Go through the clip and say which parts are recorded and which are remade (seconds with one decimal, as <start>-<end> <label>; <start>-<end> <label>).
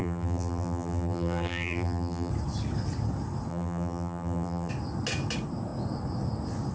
0.0-2.3 remade; 2.3-3.5 recorded; 3.5-4.7 remade; 4.7-6.7 recorded